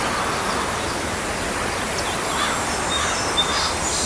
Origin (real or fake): real